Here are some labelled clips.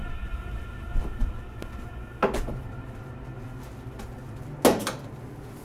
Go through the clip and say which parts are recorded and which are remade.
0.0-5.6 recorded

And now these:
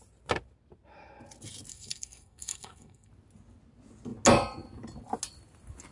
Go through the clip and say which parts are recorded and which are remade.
0.0-1.7 recorded; 1.7-3.1 remade; 3.1-5.9 recorded

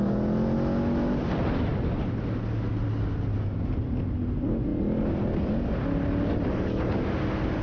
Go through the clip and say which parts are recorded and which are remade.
0.0-7.6 recorded

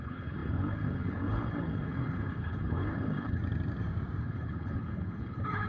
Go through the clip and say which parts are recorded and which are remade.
0.0-3.4 remade; 3.4-4.2 recorded; 4.2-5.7 remade

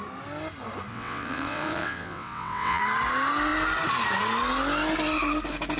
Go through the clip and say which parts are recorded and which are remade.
0.0-0.9 recorded; 0.9-2.8 remade; 2.8-5.8 recorded